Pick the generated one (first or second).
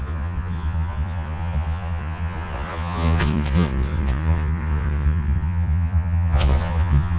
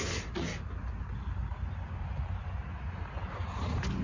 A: first